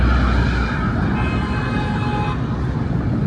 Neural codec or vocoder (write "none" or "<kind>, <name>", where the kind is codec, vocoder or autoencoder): none